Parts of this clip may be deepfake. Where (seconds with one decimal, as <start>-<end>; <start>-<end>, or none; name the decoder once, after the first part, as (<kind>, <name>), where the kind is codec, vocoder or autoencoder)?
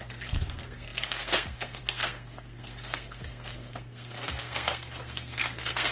0.0-5.9 (codec, SNAC)